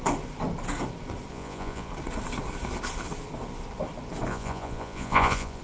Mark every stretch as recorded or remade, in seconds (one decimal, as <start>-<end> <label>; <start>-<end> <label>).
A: 0.0-1.3 recorded; 1.3-1.9 remade; 1.9-4.3 recorded; 4.3-5.6 remade